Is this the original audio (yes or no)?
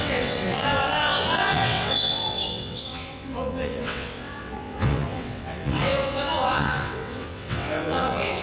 no